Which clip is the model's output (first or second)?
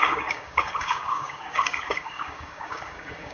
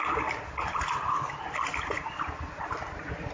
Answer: first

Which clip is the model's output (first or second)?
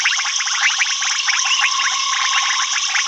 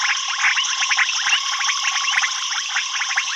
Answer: first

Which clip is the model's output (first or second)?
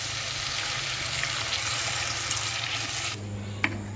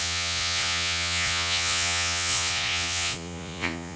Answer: second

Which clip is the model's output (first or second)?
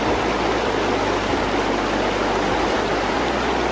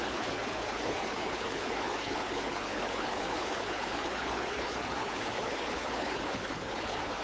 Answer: second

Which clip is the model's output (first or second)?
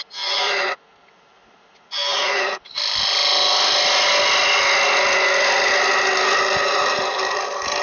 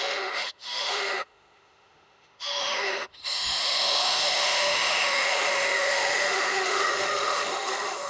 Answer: second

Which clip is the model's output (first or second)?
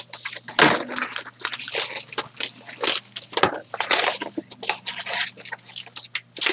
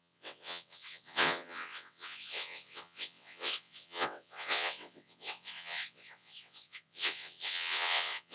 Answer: second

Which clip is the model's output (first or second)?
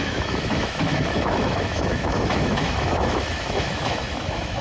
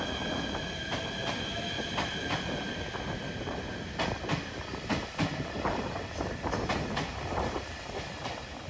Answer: first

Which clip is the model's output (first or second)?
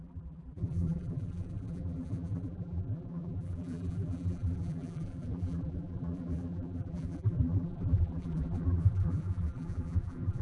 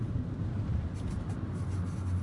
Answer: first